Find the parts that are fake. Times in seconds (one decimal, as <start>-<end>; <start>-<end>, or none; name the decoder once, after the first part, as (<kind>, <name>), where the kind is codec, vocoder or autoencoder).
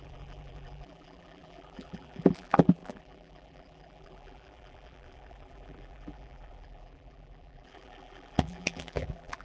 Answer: 0.0-9.4 (vocoder, BigVGAN v2)